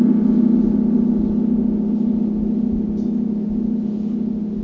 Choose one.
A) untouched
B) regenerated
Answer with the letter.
A